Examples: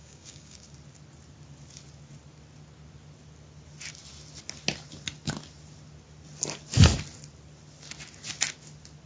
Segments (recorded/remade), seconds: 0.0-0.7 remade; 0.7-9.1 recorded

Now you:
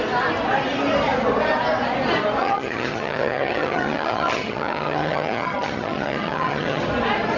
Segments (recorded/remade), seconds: 0.0-2.4 recorded; 2.4-6.8 remade; 6.8-7.4 recorded

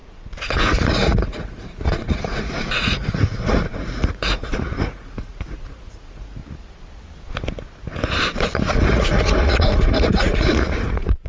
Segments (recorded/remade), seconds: 0.0-6.4 remade; 6.4-8.9 recorded; 8.9-11.3 remade

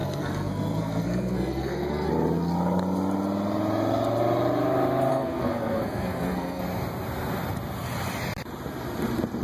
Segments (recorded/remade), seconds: 0.0-2.1 remade; 2.1-5.1 recorded; 5.1-6.6 remade; 6.6-9.4 recorded